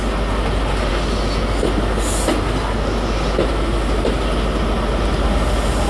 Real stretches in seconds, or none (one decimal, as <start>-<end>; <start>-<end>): 0.0-5.9